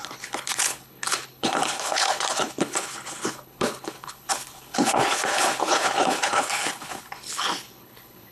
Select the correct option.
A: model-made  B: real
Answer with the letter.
A